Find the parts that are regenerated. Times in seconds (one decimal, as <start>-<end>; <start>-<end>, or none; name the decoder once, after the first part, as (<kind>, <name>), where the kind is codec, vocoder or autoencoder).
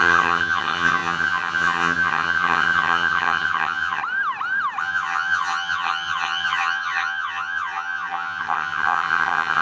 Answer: 0.0-4.0 (vocoder, HiFi-GAN); 4.8-9.6